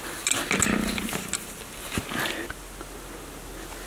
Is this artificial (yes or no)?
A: no